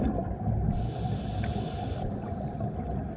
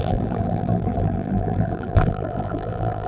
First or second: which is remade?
second